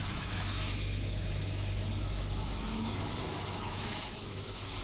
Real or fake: fake